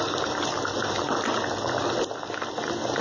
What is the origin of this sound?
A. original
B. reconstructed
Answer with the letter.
A